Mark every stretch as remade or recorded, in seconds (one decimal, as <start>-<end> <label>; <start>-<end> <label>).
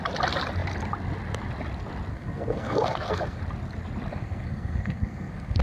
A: 0.0-2.1 recorded; 2.1-3.4 remade; 3.4-4.1 recorded; 4.1-5.6 remade